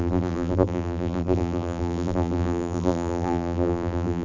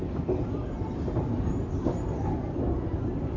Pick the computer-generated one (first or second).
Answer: first